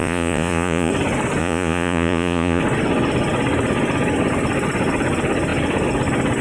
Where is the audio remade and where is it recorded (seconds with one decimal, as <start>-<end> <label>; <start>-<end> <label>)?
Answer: 0.0-0.9 remade; 0.9-1.4 recorded; 1.4-2.6 remade; 2.6-6.4 recorded

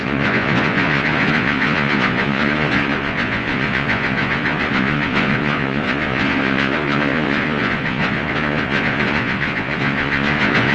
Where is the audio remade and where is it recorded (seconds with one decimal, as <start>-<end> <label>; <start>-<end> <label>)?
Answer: 0.0-10.7 remade

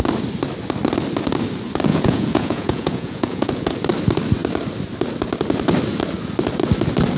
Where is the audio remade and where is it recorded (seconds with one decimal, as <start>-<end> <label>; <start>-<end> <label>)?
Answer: 0.0-1.9 recorded; 1.9-3.7 remade; 3.7-7.2 recorded

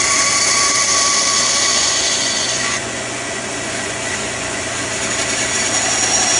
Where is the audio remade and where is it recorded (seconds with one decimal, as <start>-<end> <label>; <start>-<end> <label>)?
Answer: 0.0-1.7 recorded; 1.7-4.6 remade; 4.6-6.4 recorded

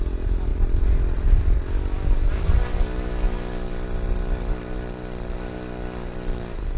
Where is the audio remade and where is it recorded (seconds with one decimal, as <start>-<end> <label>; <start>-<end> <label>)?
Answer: 0.0-6.8 recorded

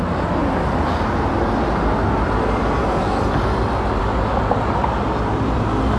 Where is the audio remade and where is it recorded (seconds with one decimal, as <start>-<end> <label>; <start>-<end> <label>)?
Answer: 0.0-6.0 recorded

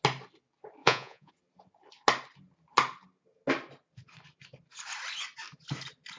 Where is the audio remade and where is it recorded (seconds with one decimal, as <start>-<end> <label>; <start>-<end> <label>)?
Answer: 0.0-0.8 recorded; 0.8-1.3 remade; 1.3-6.2 recorded

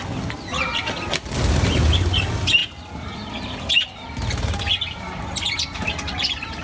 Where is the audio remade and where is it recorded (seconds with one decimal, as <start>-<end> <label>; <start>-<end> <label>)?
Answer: 0.0-6.6 recorded